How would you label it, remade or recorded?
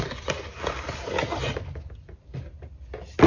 recorded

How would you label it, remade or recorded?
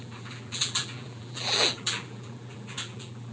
remade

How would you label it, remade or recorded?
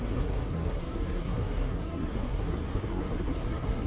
remade